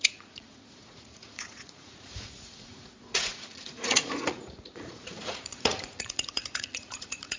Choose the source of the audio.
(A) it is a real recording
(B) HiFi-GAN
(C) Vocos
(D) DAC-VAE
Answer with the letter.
C